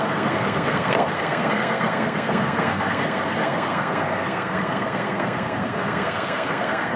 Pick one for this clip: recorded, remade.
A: remade